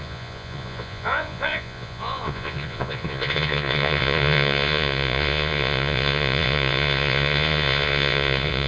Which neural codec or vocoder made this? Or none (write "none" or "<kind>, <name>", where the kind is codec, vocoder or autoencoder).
vocoder, Vocos